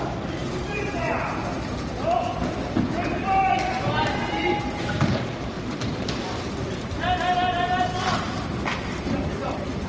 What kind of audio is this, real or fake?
real